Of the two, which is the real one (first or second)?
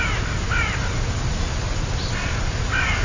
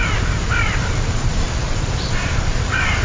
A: first